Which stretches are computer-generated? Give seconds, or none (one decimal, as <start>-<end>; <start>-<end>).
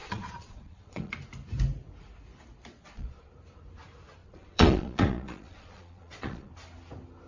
0.0-1.1; 2.7-3.3; 4.2-6.5